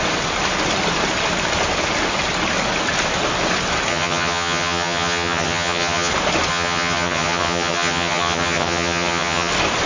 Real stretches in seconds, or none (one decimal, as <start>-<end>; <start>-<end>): 0.0-3.9; 6.1-6.5; 9.5-9.9